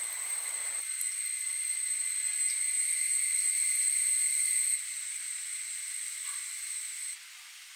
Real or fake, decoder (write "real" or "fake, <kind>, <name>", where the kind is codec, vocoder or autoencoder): real